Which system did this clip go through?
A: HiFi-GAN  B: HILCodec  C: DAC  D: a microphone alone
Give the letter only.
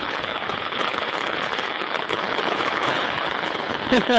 B